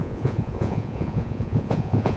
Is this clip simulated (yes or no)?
yes